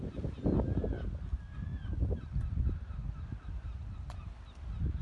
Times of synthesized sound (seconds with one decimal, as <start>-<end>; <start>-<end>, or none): none

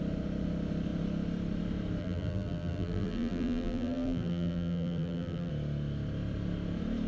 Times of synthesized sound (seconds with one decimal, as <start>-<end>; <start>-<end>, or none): 2.0-5.5

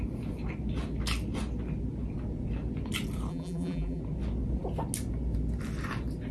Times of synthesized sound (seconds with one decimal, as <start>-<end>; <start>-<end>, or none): 3.3-4.0

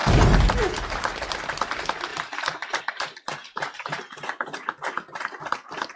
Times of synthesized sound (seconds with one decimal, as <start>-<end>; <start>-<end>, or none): 0.0-1.4; 2.1-2.8; 3.4-4.0

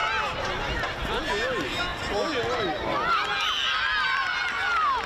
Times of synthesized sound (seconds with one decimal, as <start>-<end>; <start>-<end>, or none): none

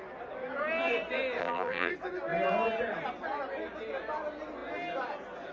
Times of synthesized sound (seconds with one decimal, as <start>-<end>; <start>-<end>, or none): 1.4-1.9